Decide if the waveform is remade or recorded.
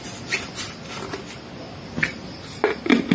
recorded